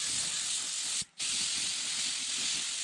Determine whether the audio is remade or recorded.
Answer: recorded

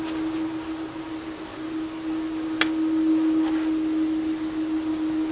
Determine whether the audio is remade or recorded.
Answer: recorded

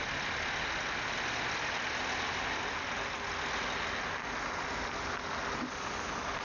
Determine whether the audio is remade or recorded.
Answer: recorded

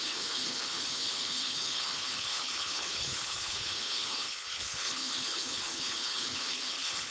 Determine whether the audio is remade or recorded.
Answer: remade